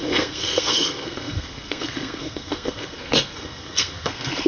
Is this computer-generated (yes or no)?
yes